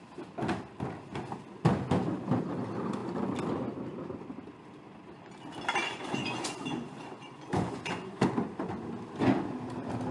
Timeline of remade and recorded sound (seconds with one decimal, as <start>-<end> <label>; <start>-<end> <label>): 0.0-5.8 recorded; 5.8-8.3 remade; 8.3-10.1 recorded

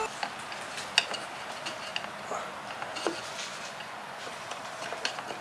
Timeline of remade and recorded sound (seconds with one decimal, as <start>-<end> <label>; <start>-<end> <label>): 0.0-2.9 recorded; 2.9-4.6 remade; 4.6-5.4 recorded

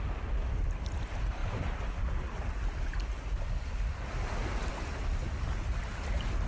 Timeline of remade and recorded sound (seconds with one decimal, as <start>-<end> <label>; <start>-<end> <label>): 0.0-6.5 recorded

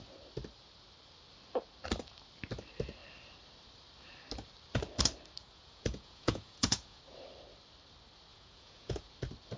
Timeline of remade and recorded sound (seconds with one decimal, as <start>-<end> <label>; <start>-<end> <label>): 0.0-5.4 recorded; 5.4-7.0 remade; 7.0-8.3 recorded; 8.3-9.1 remade; 9.1-9.6 recorded

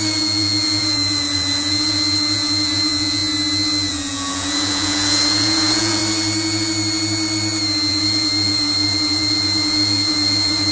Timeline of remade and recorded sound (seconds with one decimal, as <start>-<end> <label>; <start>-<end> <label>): 0.0-3.2 remade; 3.2-3.9 recorded; 3.9-6.0 remade; 6.0-7.9 recorded; 7.9-10.7 remade